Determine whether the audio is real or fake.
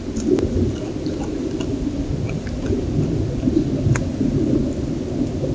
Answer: real